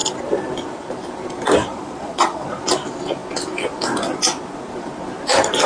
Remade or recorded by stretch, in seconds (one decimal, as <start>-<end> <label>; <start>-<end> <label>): 0.0-1.6 recorded; 1.6-2.6 remade; 2.6-5.7 recorded